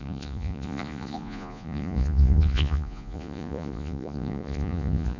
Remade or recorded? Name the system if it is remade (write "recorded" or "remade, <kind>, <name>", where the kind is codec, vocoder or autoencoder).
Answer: remade, vocoder, Vocos